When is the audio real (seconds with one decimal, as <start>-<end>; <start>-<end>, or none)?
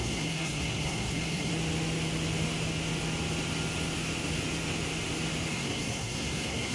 1.5-5.5